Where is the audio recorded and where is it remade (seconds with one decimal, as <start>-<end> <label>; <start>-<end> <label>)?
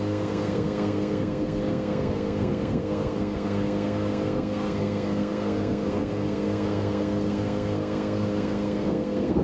0.0-9.4 remade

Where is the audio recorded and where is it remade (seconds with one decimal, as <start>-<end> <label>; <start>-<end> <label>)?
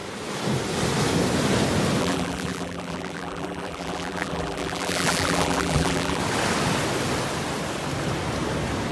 0.0-2.0 recorded; 2.0-6.2 remade; 6.2-8.9 recorded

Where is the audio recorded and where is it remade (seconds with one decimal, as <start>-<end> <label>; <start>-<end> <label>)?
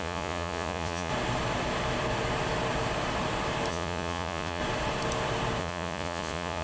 0.0-1.1 remade; 1.1-3.7 recorded; 3.7-4.6 remade; 4.6-5.6 recorded; 5.6-6.6 remade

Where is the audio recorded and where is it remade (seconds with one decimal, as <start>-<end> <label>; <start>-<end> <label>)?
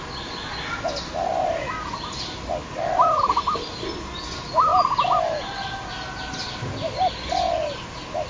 0.0-8.3 recorded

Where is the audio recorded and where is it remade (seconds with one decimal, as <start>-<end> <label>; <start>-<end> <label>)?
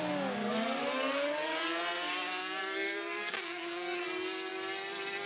0.0-0.4 recorded; 0.4-1.8 remade; 1.8-2.4 recorded; 2.4-4.0 remade; 4.0-5.3 recorded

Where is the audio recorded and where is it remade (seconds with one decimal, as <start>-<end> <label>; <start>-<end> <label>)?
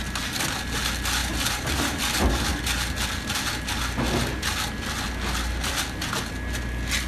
0.0-1.2 recorded; 1.2-2.0 remade; 2.0-7.1 recorded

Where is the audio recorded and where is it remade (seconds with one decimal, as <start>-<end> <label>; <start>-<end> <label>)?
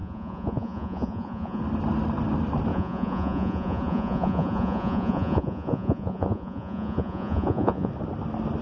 0.0-1.6 remade; 1.6-2.7 recorded; 2.7-7.9 remade; 7.9-8.6 recorded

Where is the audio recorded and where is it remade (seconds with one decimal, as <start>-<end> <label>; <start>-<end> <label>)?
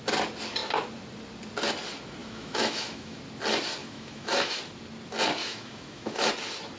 0.0-2.2 recorded; 2.2-3.2 remade; 3.2-3.8 recorded; 3.8-4.6 remade; 4.6-5.4 recorded; 5.4-6.3 remade; 6.3-6.8 recorded